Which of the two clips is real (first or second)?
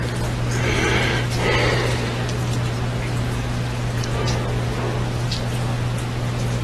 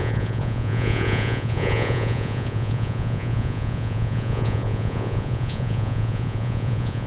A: first